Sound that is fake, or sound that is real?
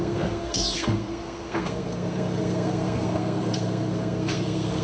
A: fake